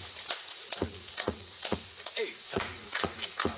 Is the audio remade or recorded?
remade